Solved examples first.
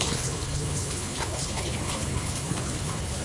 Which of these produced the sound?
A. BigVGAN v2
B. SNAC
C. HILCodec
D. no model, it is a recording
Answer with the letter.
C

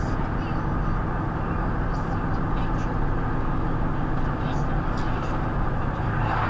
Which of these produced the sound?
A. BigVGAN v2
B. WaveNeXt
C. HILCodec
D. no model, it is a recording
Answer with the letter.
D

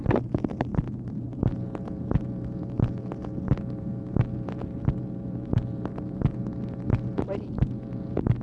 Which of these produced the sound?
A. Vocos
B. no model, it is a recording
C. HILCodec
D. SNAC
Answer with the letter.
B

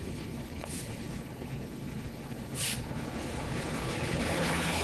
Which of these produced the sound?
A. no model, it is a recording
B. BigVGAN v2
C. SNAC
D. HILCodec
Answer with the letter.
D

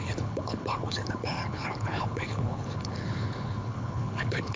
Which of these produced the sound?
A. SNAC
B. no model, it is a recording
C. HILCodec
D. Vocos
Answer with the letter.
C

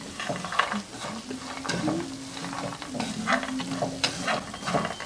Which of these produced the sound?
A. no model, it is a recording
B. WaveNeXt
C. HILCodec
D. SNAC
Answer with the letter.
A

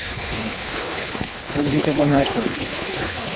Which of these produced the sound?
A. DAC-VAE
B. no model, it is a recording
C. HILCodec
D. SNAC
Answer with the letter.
C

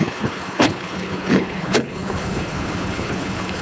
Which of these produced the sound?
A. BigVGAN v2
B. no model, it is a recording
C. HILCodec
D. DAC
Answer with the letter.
C